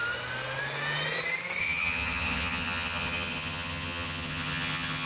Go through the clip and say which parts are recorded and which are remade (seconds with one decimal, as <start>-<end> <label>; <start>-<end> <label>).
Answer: 0.0-1.6 recorded; 1.6-5.1 remade